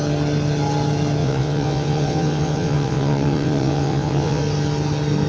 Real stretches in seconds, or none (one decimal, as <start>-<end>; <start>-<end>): 0.0-1.2; 4.4-5.3